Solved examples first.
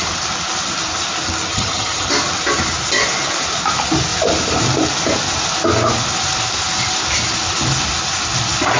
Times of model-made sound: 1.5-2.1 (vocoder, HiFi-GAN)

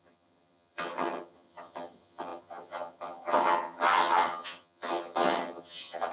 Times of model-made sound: 0.0-6.1 (vocoder, HiFi-GAN)

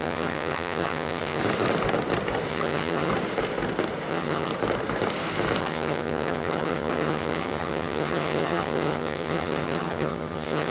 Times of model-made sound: 0.0-1.4 (vocoder, HiFi-GAN); 2.5-3.1; 4.1-4.5; 5.6-10.7

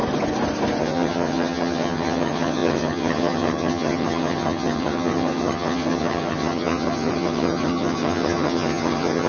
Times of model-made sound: 0.8-9.3 (vocoder, HiFi-GAN)